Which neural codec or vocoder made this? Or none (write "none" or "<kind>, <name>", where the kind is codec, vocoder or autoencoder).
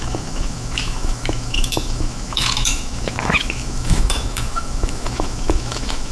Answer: autoencoder, DAC-VAE